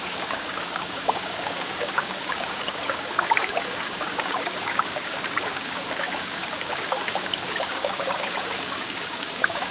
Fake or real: fake